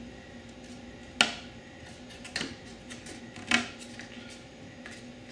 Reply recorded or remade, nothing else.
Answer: recorded